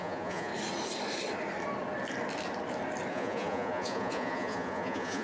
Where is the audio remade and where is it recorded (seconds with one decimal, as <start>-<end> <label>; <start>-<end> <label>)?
0.0-0.5 remade; 0.5-3.1 recorded; 3.1-5.2 remade

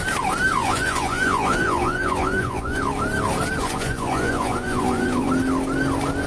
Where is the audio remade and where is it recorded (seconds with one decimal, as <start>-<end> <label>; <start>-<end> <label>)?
0.0-0.6 recorded; 0.6-2.8 remade; 2.8-3.6 recorded; 3.6-5.3 remade; 5.3-6.3 recorded

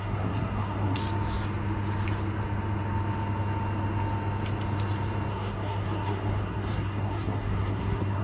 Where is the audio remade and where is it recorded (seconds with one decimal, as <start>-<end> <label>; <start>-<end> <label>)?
0.0-1.0 remade; 1.0-5.3 recorded; 5.3-8.2 remade

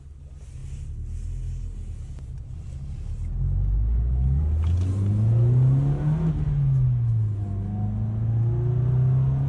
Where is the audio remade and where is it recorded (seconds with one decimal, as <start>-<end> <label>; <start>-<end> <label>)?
0.0-9.5 recorded

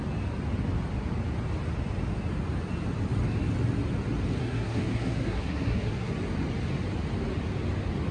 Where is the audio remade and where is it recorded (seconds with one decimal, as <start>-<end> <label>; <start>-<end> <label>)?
0.0-4.4 recorded; 4.4-6.1 remade; 6.1-8.1 recorded

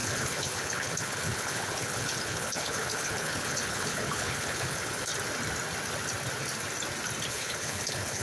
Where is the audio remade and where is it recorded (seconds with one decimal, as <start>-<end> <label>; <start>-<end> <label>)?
0.0-5.1 remade; 5.1-7.3 recorded; 7.3-8.2 remade